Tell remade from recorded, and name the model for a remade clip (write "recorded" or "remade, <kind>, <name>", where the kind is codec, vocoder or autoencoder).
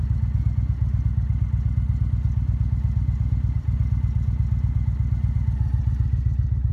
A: recorded